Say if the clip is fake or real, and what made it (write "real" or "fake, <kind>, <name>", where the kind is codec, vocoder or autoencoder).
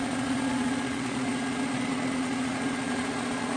fake, vocoder, Vocos